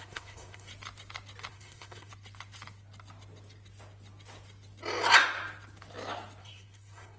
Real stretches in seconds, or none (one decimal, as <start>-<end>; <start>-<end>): 0.7-1.5; 2.1-6.4